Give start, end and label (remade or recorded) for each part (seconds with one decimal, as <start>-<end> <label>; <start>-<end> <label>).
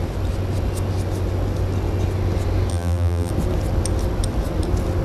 0.0-2.7 recorded; 2.7-3.3 remade; 3.3-5.0 recorded